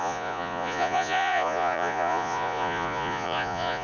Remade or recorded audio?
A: remade